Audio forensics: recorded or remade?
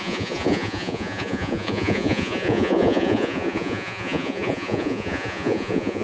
remade